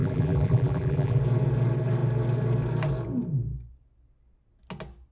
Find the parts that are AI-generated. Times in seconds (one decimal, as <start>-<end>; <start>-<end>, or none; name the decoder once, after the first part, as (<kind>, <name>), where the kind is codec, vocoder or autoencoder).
0.0-1.2 (vocoder, BigVGAN v2)